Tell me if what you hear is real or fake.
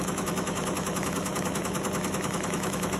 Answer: fake